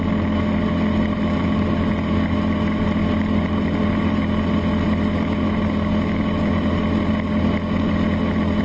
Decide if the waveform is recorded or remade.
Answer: recorded